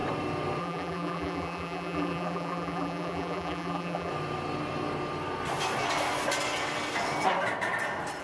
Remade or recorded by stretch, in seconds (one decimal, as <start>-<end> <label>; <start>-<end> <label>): 0.0-0.6 recorded; 0.6-4.1 remade; 4.1-8.2 recorded